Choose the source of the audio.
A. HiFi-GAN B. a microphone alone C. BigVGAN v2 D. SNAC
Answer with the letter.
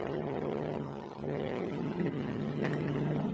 A